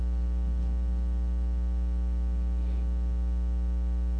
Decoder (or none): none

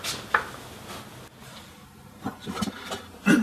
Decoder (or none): none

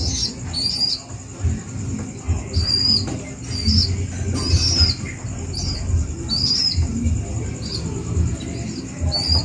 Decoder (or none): none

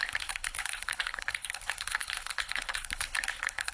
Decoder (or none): codec, HILCodec